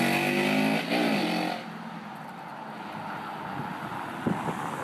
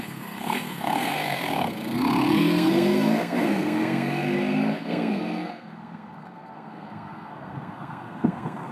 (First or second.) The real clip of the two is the first